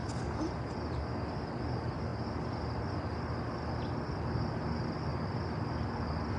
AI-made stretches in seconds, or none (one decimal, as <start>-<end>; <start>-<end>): none